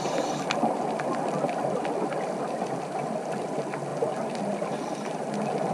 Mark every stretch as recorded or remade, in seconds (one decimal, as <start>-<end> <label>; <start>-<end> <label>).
0.0-5.7 recorded

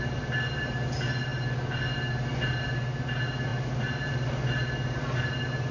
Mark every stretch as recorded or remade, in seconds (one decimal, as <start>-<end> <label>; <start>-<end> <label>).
0.0-5.7 recorded

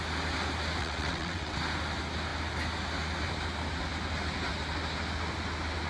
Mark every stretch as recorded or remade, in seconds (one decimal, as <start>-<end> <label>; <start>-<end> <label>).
0.0-0.8 recorded; 0.8-1.6 remade; 1.6-5.9 recorded